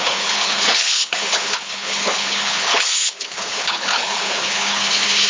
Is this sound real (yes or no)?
no